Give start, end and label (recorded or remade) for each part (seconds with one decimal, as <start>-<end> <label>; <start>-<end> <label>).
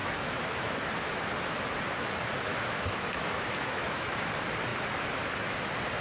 0.0-0.8 remade; 0.8-2.5 recorded; 2.5-4.2 remade; 4.2-6.0 recorded